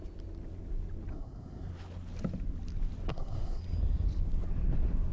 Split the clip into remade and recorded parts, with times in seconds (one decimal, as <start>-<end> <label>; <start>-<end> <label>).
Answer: 0.0-1.1 recorded; 1.1-1.7 remade; 1.7-3.1 recorded; 3.1-3.6 remade; 3.6-5.1 recorded